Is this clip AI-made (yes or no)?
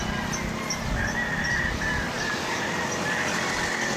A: no